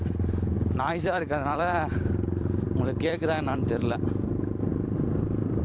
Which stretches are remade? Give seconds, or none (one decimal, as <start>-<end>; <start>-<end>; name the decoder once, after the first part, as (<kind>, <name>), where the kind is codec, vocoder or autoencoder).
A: 0.9-4.3 (vocoder, BigVGAN v2); 4.7-5.6